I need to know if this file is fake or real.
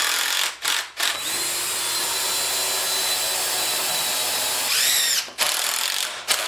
real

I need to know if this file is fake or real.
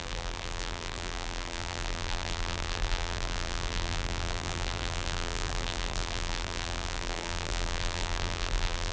fake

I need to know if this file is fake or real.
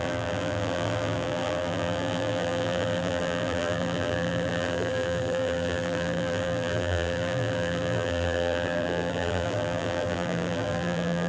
fake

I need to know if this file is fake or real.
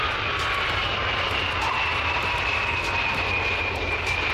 fake